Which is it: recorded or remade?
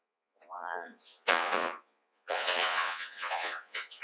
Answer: remade